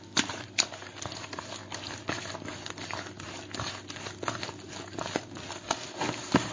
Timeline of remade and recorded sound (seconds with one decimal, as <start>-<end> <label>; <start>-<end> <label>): 0.0-6.5 recorded